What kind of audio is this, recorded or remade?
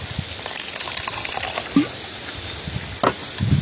recorded